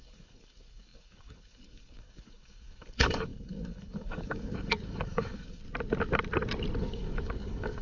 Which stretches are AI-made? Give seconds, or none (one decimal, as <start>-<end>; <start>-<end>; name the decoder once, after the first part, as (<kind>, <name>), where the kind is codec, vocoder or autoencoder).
0.0-5.6 (codec, DAC); 6.8-7.8